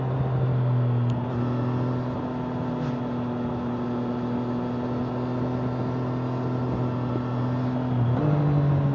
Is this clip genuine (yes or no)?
yes